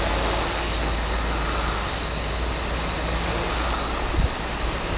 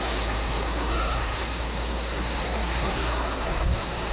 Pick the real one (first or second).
first